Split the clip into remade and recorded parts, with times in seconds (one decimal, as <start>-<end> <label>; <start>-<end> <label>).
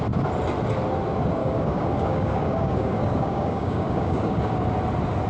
0.0-1.4 recorded; 1.4-4.6 remade; 4.6-5.3 recorded